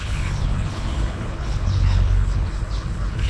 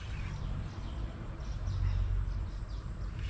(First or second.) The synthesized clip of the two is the first